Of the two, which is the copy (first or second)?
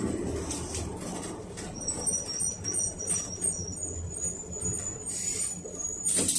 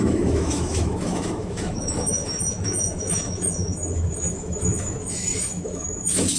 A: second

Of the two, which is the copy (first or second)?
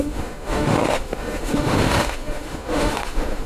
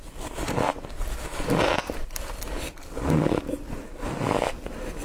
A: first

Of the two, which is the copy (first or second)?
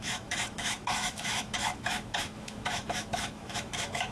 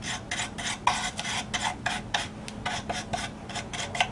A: first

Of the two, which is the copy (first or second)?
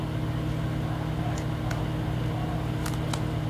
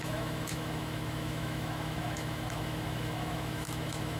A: second